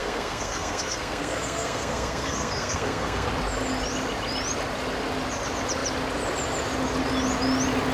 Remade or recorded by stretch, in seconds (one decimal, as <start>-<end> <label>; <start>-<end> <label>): 0.0-3.3 remade; 3.3-7.9 recorded